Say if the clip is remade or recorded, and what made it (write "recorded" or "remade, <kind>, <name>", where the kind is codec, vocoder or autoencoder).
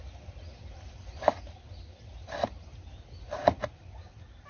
recorded